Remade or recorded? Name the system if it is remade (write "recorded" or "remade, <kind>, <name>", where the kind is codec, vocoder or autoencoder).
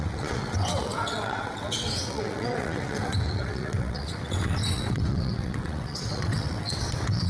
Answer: remade, vocoder, WaveNeXt